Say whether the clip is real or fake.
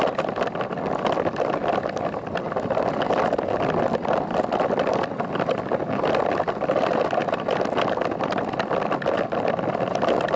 real